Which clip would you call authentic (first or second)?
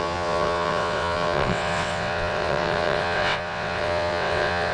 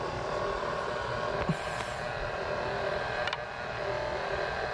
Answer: second